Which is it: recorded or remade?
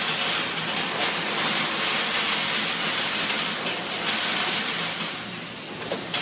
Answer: recorded